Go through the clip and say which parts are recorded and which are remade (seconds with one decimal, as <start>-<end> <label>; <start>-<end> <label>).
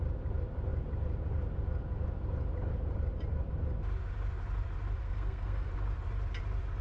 0.0-5.0 recorded; 5.0-5.7 remade; 5.7-6.8 recorded